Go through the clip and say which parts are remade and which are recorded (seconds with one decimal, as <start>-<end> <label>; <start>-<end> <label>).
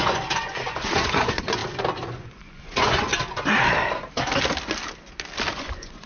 0.0-1.6 remade; 1.6-2.1 recorded; 2.1-3.1 remade; 3.1-5.5 recorded; 5.5-6.1 remade